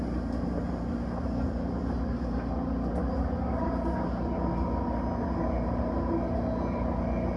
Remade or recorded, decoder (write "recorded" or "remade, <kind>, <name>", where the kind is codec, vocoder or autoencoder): recorded